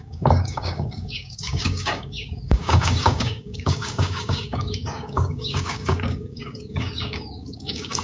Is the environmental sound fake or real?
fake